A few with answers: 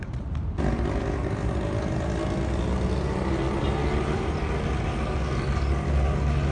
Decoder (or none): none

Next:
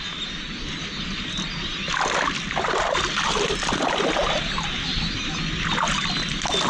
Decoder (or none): none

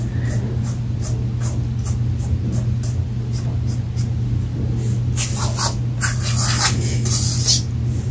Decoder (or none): none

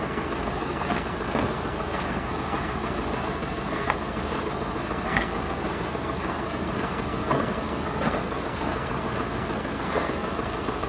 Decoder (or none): codec, SNAC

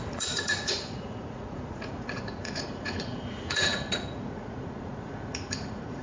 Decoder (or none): vocoder, Vocos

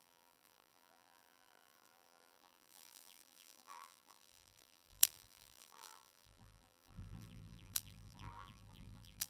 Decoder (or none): vocoder, BigVGAN v2